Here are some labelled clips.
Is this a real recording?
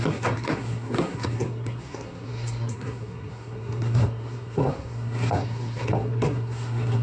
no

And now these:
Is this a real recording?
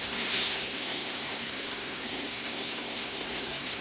no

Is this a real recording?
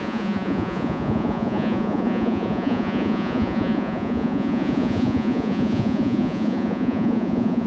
no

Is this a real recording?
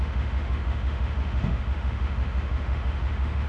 no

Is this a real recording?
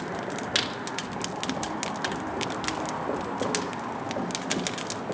yes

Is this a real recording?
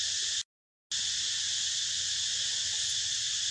yes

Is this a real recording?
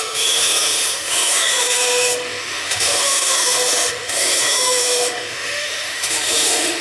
no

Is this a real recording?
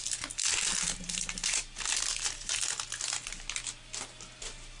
yes